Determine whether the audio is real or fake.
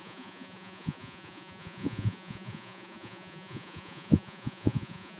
fake